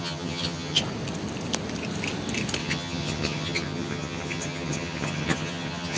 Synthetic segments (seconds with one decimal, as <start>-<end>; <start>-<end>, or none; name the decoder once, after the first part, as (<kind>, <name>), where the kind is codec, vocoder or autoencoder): 0.0-0.8 (vocoder, HiFi-GAN); 2.6-6.0